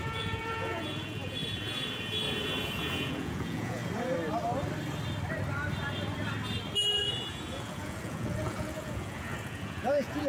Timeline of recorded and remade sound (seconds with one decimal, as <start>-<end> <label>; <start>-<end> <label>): 0.0-3.8 remade; 3.8-7.3 recorded; 7.3-10.3 remade